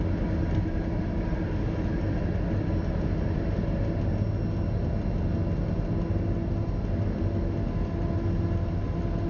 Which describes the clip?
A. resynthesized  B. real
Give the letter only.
B